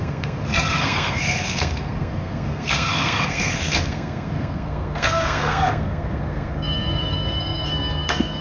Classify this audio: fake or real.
fake